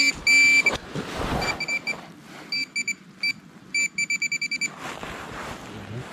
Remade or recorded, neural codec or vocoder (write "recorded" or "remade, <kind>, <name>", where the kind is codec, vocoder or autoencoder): recorded